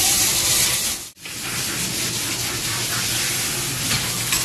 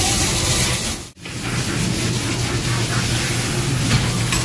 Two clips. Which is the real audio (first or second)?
second